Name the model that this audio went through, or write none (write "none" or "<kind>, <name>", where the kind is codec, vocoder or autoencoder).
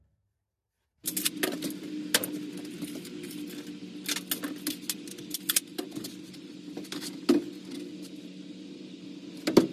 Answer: none